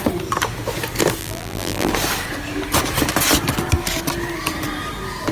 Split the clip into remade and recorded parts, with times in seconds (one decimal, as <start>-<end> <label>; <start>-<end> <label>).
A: 0.0-1.2 recorded; 1.2-1.9 remade; 1.9-5.3 recorded